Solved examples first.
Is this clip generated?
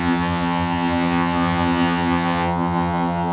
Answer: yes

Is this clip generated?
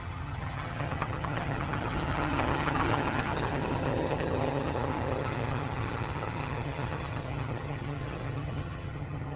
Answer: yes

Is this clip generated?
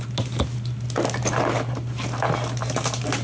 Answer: no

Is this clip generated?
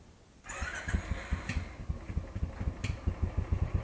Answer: no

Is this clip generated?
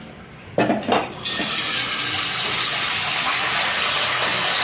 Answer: no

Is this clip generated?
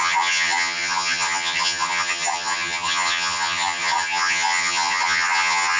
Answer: yes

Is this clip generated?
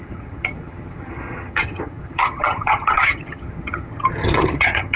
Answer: yes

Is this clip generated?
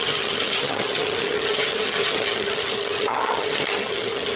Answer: yes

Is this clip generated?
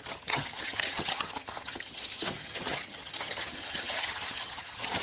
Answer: yes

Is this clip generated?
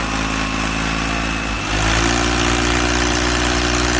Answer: no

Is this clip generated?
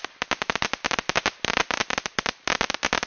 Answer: no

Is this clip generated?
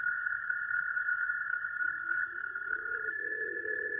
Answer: yes